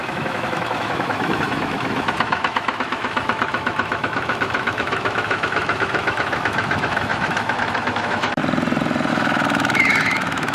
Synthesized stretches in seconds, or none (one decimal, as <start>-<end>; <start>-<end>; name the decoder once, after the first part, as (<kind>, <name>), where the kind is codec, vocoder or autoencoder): 0.0-8.4 (autoencoder, DAC-VAE); 9.1-10.5

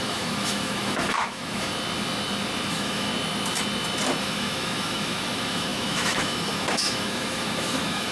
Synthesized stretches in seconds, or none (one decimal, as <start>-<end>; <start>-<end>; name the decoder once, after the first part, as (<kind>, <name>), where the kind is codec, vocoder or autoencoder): 0.0-1.7 (autoencoder, DAC-VAE); 2.7-3.1; 4.2-8.1

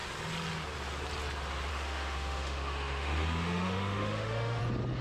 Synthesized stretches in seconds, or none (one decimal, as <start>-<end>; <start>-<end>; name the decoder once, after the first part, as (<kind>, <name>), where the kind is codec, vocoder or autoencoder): 1.7-4.6 (autoencoder, DAC-VAE)

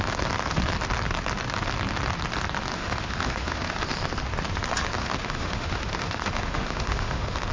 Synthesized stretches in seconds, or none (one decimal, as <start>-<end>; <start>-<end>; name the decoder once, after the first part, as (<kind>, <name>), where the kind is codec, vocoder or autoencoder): 2.7-3.8 (autoencoder, DAC-VAE); 5.0-7.5